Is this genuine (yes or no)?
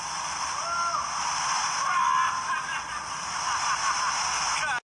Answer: yes